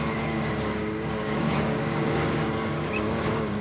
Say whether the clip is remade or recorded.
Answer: remade